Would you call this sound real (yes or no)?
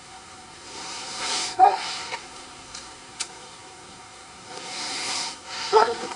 no